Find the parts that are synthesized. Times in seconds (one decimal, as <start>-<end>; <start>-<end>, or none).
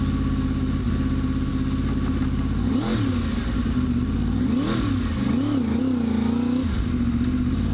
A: none